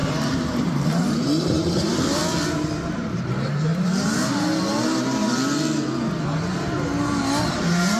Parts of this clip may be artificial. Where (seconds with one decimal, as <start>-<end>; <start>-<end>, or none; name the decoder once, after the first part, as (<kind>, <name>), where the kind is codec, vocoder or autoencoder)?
0.0-2.2 (vocoder, BigVGAN v2); 2.9-3.7; 7.4-8.0